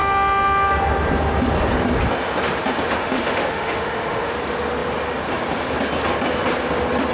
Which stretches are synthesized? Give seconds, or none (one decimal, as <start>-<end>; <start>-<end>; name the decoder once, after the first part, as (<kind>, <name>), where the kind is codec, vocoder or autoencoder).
3.0-4.3 (autoencoder, DAC-VAE)